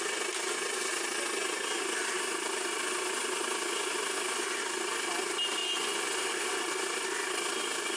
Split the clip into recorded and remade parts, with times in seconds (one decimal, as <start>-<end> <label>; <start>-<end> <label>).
0.0-5.6 recorded; 5.6-6.2 remade; 6.2-8.0 recorded